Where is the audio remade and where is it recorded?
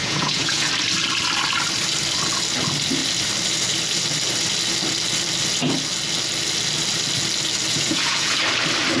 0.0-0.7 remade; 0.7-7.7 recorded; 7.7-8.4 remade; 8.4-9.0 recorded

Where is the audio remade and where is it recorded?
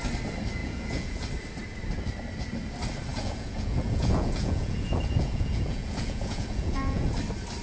0.0-0.6 recorded; 0.6-1.2 remade; 1.2-3.1 recorded; 3.1-7.1 remade; 7.1-7.6 recorded